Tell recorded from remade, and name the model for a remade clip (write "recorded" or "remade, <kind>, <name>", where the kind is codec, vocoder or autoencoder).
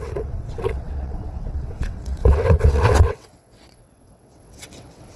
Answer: remade, vocoder, WaveNeXt